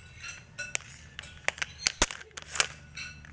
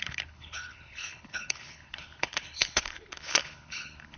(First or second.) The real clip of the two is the first